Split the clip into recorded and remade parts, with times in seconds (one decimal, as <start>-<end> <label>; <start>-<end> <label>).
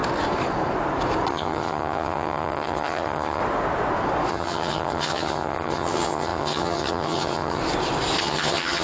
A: 0.0-1.3 recorded; 1.3-3.4 remade; 3.4-4.3 recorded; 4.3-7.6 remade; 7.6-8.2 recorded; 8.2-8.8 remade